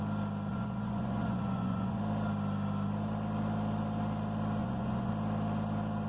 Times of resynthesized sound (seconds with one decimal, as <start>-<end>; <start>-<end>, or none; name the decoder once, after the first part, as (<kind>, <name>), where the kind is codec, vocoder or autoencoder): 0.5-2.0 (vocoder, Vocos); 4.6-5.1